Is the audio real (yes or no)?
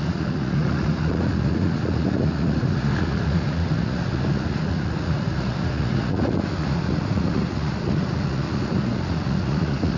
no